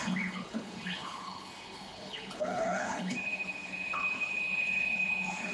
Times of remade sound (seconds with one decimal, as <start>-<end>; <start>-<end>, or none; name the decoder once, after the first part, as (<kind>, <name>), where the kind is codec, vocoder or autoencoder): 0.0-5.5 (codec, HILCodec)